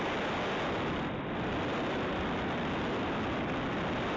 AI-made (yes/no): no